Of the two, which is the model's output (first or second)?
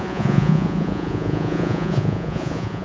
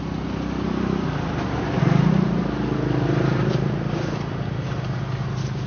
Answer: first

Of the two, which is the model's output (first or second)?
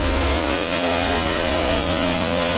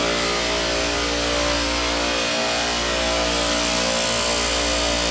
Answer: first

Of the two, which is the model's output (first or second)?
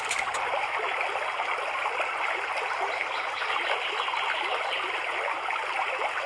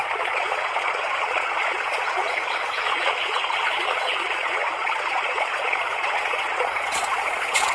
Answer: second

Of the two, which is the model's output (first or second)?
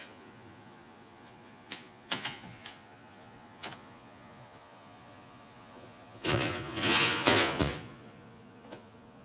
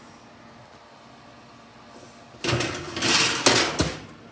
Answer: first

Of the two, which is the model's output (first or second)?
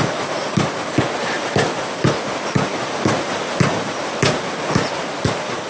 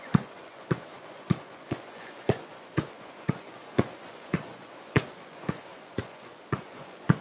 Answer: second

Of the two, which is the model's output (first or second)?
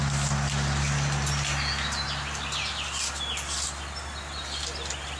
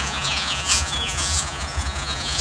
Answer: second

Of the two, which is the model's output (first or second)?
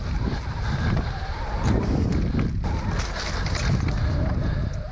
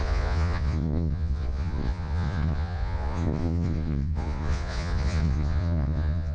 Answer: second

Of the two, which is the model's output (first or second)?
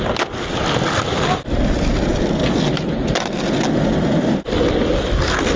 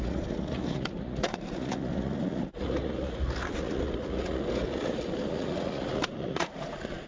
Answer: second